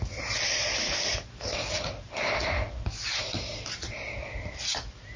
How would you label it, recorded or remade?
recorded